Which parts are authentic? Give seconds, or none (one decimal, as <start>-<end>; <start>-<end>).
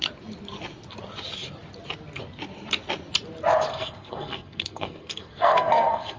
0.0-3.7